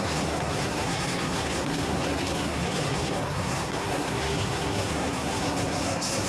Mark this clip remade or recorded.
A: remade